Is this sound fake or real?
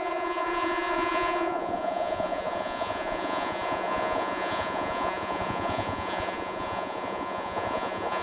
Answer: fake